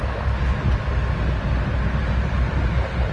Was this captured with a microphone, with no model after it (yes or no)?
yes